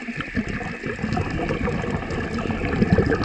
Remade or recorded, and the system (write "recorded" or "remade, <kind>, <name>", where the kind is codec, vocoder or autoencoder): recorded